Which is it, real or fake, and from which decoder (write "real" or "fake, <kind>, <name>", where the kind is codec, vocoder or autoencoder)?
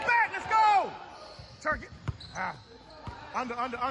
real